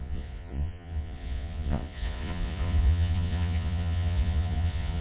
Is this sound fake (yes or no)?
yes